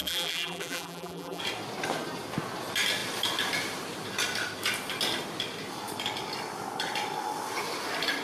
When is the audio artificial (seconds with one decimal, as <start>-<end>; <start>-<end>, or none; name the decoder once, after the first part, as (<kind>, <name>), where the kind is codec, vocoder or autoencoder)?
0.0-1.4 (vocoder, BigVGAN v2)